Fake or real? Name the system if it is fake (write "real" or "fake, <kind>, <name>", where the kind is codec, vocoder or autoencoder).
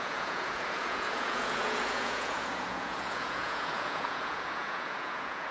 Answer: fake, vocoder, Vocos